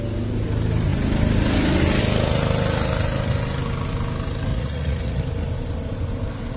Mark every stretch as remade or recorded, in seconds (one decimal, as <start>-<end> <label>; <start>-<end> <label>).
0.0-4.5 recorded; 4.5-5.2 remade; 5.2-6.6 recorded